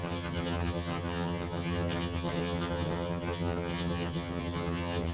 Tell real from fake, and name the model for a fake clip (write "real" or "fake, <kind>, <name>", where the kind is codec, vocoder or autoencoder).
fake, vocoder, HiFi-GAN